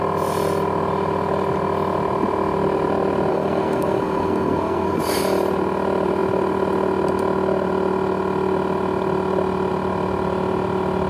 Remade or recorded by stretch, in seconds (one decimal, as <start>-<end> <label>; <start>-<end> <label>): 0.0-3.3 recorded; 3.3-5.0 remade; 5.0-11.1 recorded